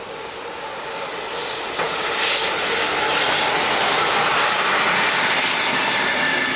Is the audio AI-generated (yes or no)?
no